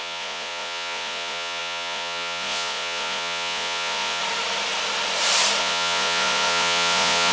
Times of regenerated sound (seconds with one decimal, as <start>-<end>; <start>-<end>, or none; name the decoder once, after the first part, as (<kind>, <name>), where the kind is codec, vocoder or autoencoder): 0.0-4.2 (vocoder, Vocos); 5.6-7.3